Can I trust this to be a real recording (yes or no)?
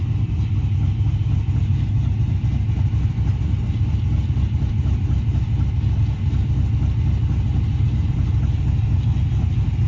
no